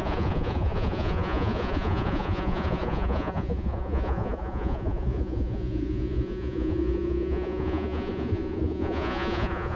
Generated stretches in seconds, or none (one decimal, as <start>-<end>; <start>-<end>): 0.0-9.8